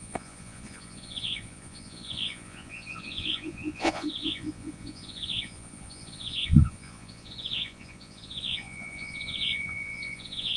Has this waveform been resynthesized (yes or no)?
yes